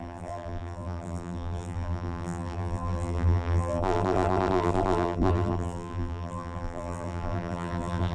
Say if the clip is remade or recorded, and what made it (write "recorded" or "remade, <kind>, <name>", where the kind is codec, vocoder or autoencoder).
remade, vocoder, BigVGAN v2